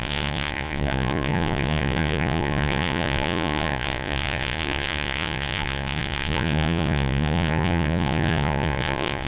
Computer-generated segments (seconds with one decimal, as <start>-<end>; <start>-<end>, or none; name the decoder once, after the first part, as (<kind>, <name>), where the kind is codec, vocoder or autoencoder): 0.0-9.3 (vocoder, Vocos)